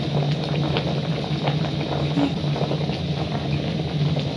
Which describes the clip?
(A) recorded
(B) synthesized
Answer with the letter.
A